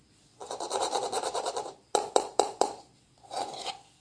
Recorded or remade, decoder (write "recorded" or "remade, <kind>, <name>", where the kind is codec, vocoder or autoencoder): remade, vocoder, Vocos